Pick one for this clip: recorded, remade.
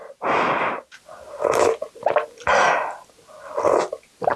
recorded